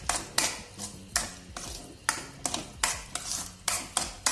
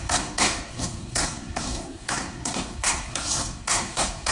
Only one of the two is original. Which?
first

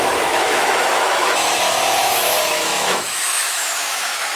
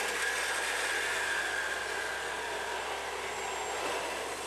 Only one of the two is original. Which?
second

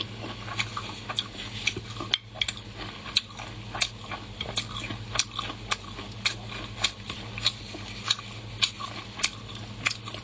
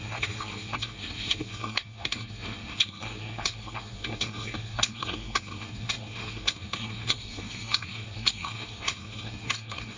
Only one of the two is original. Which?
first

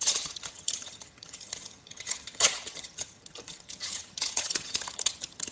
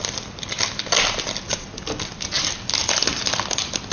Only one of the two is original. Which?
second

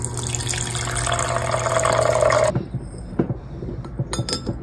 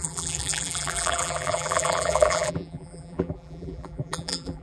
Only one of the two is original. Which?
first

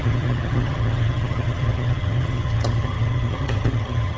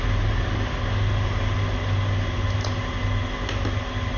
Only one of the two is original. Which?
second